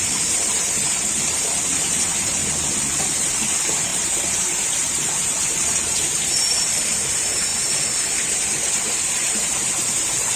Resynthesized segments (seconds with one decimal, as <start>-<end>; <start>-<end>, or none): 0.0-2.4; 3.2-10.4